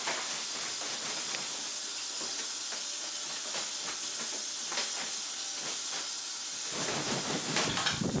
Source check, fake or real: real